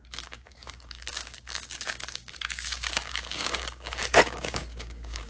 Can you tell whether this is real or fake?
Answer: fake